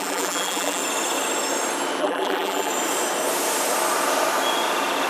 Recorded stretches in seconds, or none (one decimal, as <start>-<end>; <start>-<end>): 0.8-2.0; 2.7-5.1